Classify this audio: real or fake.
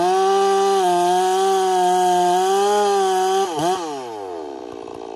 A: real